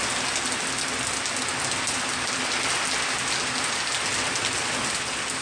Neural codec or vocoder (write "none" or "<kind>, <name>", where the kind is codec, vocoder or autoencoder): none